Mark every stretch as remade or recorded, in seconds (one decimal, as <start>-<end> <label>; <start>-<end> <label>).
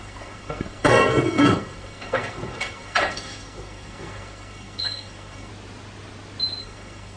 0.0-5.5 remade; 5.5-6.6 recorded; 6.6-7.2 remade